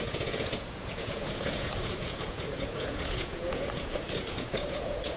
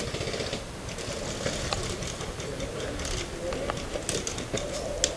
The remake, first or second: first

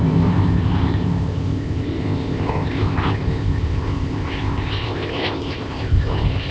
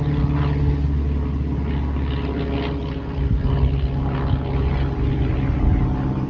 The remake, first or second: first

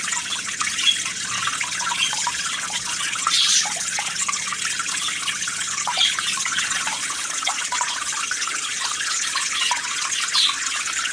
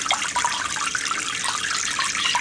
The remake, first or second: first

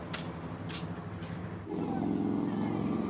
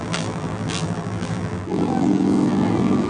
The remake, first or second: second